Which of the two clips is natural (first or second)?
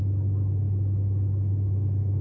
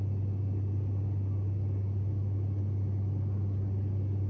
second